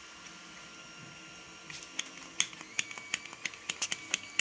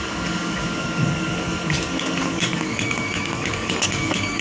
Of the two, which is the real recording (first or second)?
first